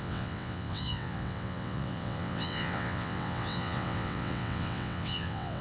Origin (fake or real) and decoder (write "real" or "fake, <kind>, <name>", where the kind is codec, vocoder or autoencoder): fake, vocoder, WaveNeXt